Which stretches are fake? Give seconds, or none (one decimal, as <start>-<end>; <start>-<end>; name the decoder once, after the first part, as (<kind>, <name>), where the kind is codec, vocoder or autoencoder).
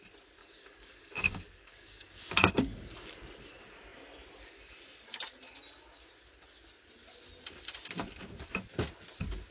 0.4-2.5 (codec, DAC)